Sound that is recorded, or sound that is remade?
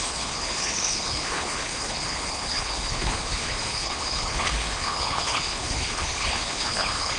remade